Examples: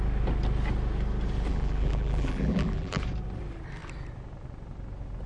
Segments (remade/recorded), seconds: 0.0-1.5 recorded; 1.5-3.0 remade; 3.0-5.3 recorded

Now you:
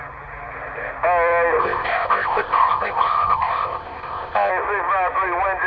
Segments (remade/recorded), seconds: 0.0-1.6 recorded; 1.6-4.5 remade; 4.5-5.7 recorded

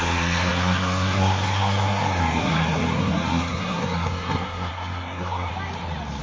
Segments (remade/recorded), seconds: 0.0-5.5 remade; 5.5-6.2 recorded

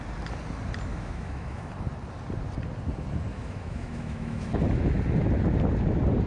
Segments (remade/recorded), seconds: 0.0-0.9 recorded; 0.9-1.7 remade; 1.7-3.3 recorded; 3.3-4.5 remade; 4.5-6.3 recorded

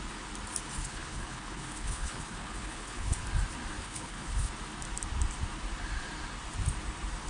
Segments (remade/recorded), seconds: 0.0-0.8 recorded; 0.8-3.2 remade; 3.2-3.8 recorded; 3.8-4.5 remade; 4.5-7.3 recorded

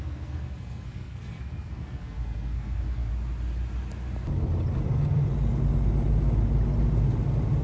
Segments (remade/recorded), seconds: 0.0-3.1 remade; 3.1-7.6 recorded

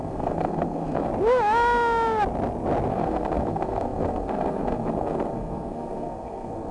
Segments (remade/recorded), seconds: 0.0-1.1 remade; 1.1-2.9 recorded; 2.9-6.7 remade

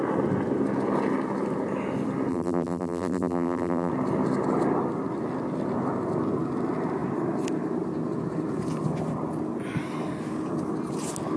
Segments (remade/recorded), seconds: 0.0-2.3 recorded; 2.3-3.9 remade; 3.9-11.4 recorded